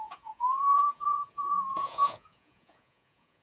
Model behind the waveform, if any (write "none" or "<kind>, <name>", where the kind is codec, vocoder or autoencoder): vocoder, Vocos